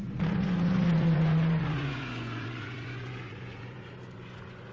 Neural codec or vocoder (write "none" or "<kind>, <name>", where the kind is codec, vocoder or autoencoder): vocoder, Vocos